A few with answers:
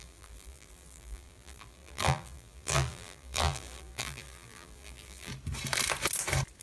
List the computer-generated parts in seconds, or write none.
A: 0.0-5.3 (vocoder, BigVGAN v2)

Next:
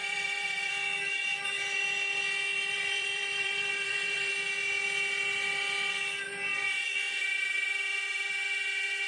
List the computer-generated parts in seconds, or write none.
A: 0.0-0.7 (vocoder, BigVGAN v2); 2.5-4.3

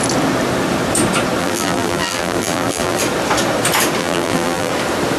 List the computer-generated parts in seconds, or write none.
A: 1.4-3.0 (vocoder, BigVGAN v2); 4.0-4.7

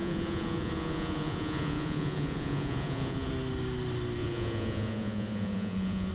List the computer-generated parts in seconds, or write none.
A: 0.0-3.3 (vocoder, Vocos); 4.2-6.1

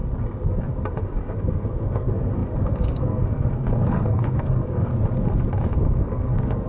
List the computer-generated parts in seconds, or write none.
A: 1.0-4.9 (codec, SNAC); 6.0-6.7

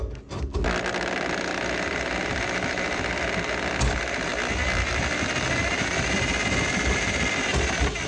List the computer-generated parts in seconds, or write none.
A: none